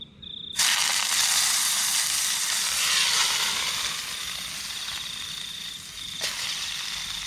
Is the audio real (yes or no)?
yes